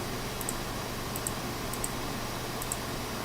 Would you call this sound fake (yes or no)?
no